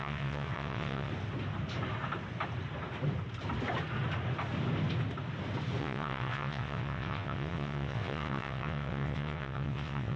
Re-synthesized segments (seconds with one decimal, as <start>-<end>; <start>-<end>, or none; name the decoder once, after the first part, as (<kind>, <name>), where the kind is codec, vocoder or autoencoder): 0.0-1.1 (vocoder, WaveNeXt); 5.8-10.2